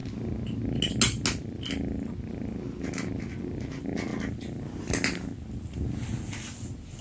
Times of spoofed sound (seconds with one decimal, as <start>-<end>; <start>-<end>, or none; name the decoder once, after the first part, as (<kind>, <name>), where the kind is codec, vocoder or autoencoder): none